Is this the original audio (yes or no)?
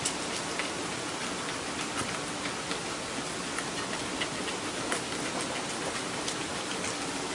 yes